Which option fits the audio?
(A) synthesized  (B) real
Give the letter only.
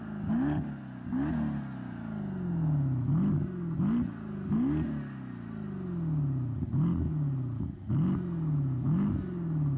B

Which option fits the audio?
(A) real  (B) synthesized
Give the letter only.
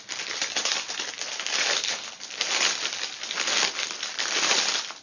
B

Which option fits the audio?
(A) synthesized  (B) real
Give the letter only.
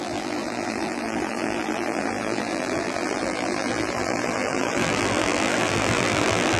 A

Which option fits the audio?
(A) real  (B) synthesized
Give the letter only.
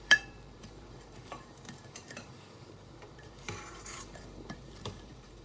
B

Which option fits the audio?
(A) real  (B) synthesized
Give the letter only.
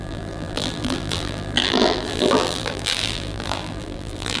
B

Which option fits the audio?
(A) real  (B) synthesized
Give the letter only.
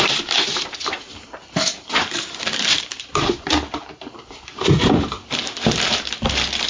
B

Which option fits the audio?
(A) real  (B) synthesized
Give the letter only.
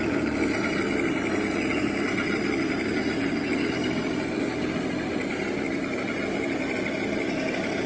B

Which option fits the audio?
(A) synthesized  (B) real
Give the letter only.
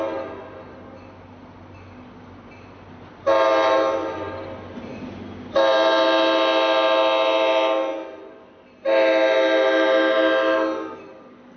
B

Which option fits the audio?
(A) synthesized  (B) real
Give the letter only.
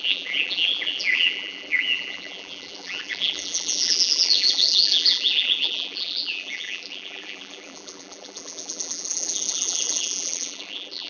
A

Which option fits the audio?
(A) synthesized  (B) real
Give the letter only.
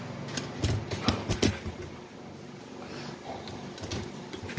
B